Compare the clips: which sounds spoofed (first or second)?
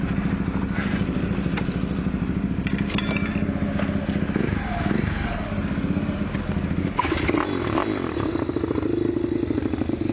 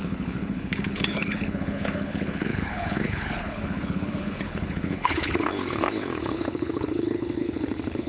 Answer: second